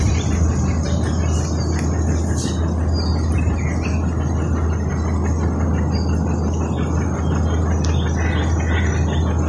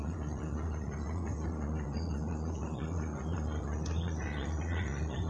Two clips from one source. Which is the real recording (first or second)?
first